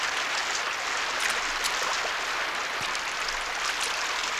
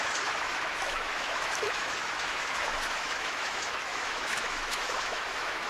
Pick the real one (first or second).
first